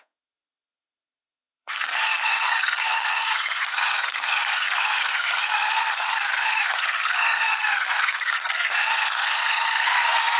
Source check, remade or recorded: remade